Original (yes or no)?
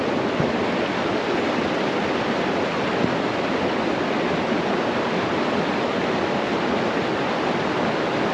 yes